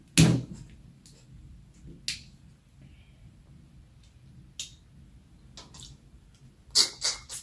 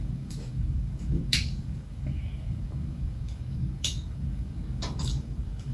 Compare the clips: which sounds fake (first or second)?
second